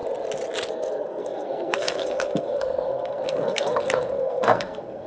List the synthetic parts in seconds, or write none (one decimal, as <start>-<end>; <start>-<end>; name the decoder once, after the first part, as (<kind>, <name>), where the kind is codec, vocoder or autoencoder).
0.7-5.1 (codec, SNAC)

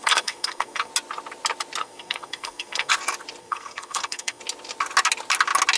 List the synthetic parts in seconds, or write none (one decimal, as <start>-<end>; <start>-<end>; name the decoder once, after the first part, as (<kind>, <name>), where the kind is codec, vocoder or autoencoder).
0.0-0.9 (codec, SNAC); 1.8-2.9; 3.4-4.4

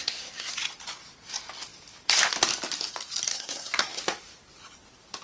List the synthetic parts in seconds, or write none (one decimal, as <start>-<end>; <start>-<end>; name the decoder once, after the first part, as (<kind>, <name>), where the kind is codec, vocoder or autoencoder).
0.0-0.5 (codec, SNAC); 3.3-4.0